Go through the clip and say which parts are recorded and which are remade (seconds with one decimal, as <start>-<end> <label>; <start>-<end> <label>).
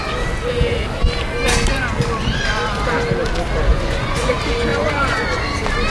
0.0-3.7 recorded; 3.7-4.3 remade; 4.3-4.7 recorded; 4.7-5.4 remade; 5.4-5.9 recorded